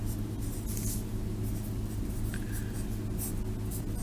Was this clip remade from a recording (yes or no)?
no